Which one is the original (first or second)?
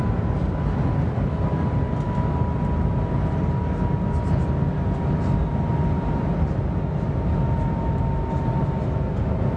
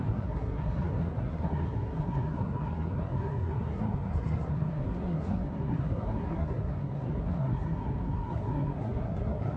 first